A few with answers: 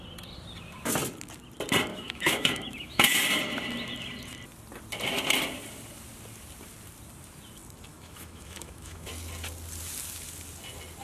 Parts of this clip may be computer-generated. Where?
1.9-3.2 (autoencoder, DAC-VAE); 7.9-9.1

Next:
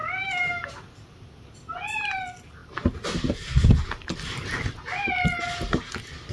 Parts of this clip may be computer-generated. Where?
0.0-0.6 (autoencoder, DAC-VAE)

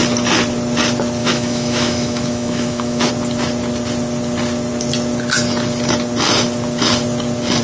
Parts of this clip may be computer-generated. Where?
1.2-3.1 (autoencoder, DAC-VAE)

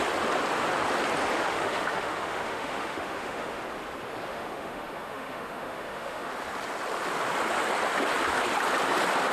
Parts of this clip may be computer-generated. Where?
1.4-3.6 (autoencoder, DAC-VAE); 4.3-6.3

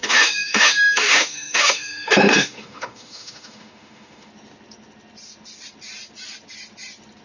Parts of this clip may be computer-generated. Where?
0.0-4.3 (autoencoder, DAC-VAE)

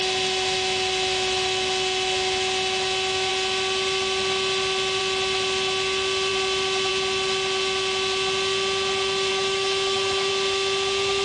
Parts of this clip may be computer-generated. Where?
9.3-10.3 (autoencoder, DAC-VAE)

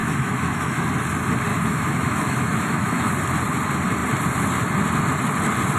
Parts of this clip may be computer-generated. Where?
0.0-0.9 (autoencoder, DAC-VAE); 1.5-3.1

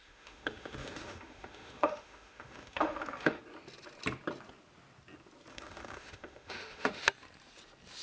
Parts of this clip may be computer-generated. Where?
0.0-3.4 (autoencoder, DAC-VAE); 5.5-7.0